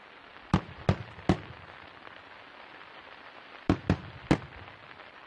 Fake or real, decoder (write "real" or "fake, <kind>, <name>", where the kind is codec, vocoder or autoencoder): real